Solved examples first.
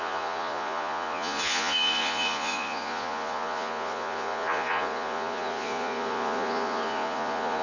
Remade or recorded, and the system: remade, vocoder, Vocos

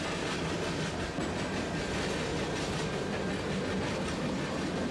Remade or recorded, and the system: recorded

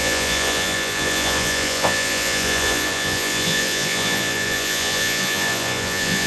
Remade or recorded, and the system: remade, vocoder, Vocos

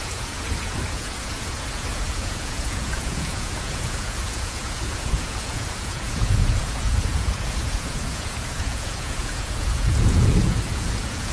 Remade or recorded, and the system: remade, vocoder, Vocos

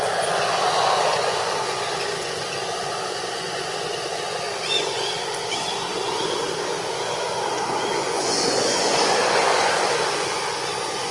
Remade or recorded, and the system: remade, vocoder, Vocos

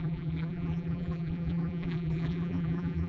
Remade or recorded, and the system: remade, vocoder, BigVGAN v2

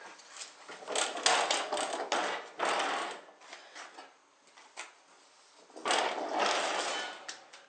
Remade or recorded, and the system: recorded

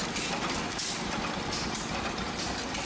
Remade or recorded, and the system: recorded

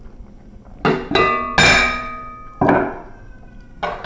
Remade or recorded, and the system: recorded